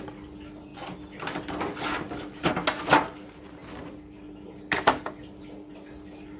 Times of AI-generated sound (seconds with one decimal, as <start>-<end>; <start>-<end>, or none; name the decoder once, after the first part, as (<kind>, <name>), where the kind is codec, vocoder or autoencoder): none